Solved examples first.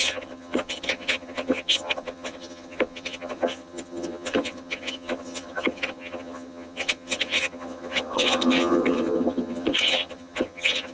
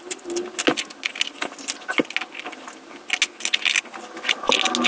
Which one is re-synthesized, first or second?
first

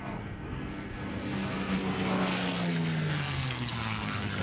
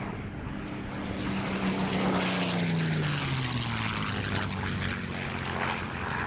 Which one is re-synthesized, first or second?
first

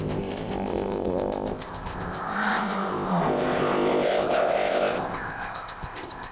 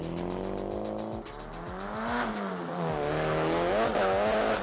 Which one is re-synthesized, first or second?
first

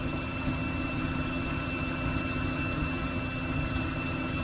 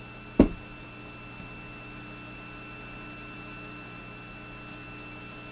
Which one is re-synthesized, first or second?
first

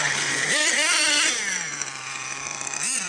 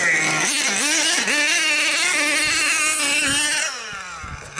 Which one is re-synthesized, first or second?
first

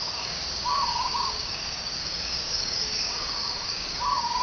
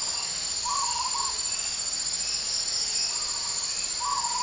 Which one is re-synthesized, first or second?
first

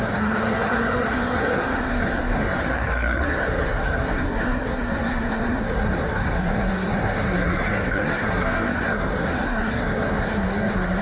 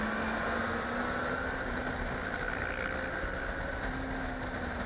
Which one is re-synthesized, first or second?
first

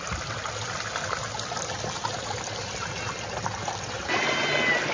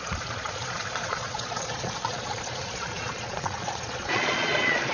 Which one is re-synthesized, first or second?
second